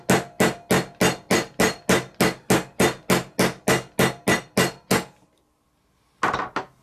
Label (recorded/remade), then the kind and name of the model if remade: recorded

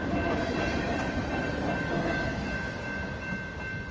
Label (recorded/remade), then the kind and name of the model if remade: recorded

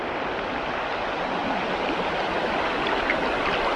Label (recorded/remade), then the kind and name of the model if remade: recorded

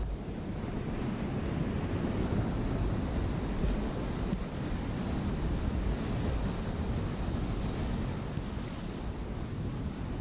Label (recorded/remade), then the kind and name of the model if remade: recorded